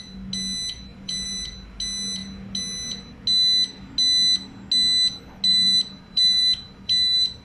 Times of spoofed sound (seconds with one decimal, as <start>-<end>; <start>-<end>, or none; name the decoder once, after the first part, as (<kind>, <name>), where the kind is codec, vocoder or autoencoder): 0.9-1.8 (vocoder, BigVGAN v2); 5.5-7.4